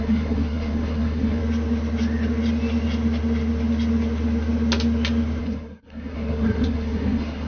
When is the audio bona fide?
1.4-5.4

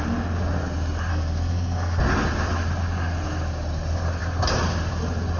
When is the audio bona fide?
0.0-1.1; 2.0-5.4

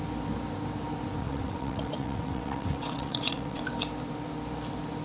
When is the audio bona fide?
0.0-1.2; 3.6-5.0